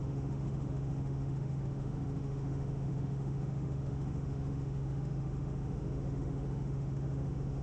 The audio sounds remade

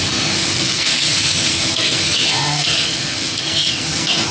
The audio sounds remade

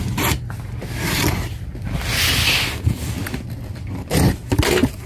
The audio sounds recorded